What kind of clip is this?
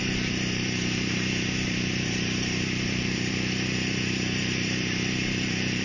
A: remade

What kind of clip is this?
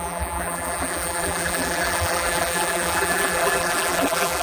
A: remade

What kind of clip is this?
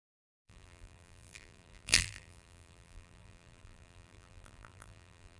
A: remade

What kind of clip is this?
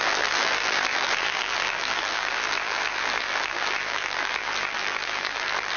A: remade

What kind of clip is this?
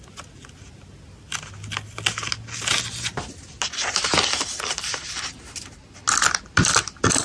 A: recorded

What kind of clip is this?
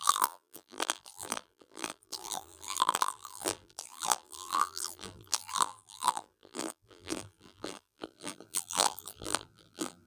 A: remade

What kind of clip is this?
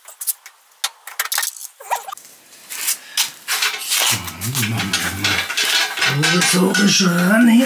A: recorded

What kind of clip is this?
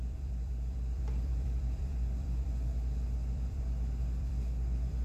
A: remade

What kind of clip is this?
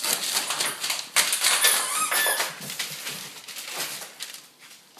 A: recorded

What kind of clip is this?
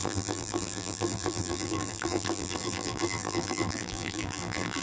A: remade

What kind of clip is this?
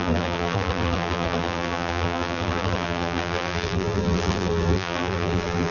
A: remade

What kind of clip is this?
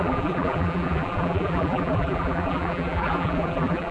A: remade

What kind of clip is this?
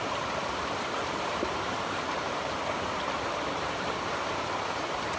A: remade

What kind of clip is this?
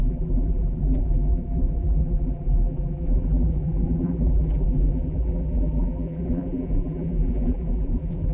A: remade